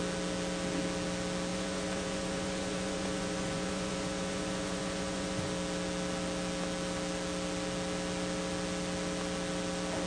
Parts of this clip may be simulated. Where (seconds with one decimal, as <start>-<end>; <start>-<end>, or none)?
1.5-5.5